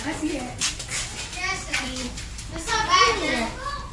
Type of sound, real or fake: real